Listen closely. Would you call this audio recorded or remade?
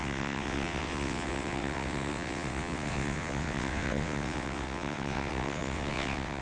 remade